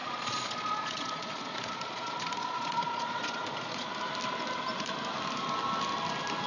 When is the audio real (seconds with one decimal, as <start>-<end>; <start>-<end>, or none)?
3.9-6.5